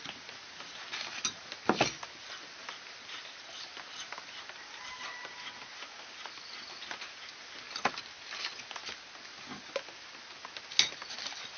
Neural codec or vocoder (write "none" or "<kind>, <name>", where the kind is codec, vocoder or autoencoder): none